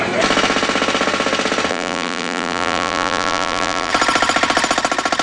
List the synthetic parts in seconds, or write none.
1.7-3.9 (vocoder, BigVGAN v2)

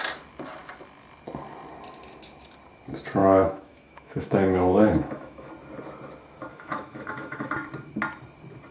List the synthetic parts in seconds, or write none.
3.2-5.5 (autoencoder, DAC-VAE); 6.5-7.5

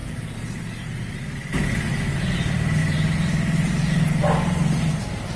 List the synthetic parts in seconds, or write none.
2.8-4.9 (vocoder, BigVGAN v2)

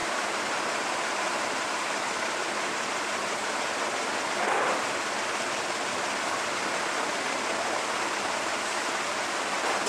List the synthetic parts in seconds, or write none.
0.0-2.9 (vocoder, BigVGAN v2)

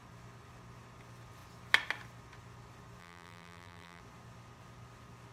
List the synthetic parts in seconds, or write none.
3.0-4.0 (vocoder, BigVGAN v2)